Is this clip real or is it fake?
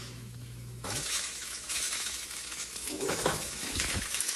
fake